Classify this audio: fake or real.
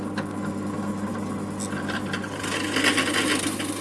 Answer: real